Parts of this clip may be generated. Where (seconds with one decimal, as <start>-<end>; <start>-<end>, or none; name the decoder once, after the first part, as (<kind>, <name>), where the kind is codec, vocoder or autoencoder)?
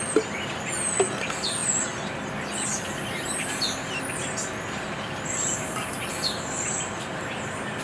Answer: none